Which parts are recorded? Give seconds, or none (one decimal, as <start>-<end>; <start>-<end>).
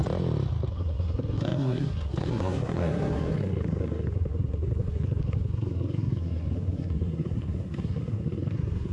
0.0-0.7